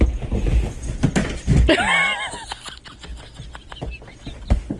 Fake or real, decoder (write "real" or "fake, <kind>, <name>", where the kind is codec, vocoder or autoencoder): real